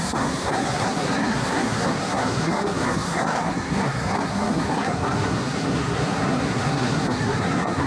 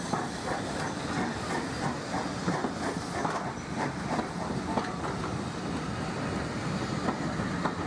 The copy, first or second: first